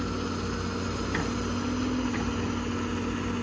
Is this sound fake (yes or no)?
no